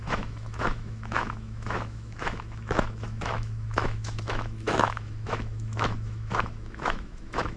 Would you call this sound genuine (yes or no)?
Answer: no